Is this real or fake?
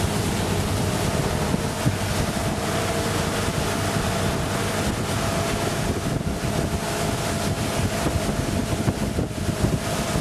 real